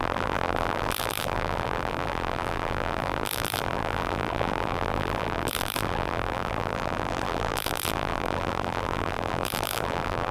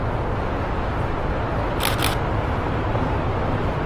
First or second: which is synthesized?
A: first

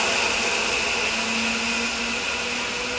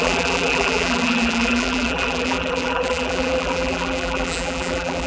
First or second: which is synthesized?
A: second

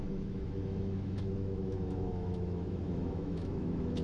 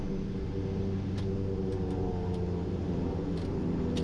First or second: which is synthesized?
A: first